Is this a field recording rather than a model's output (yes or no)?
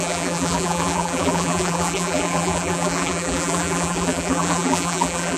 no